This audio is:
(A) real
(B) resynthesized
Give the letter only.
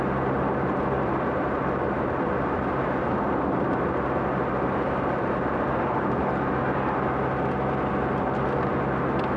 A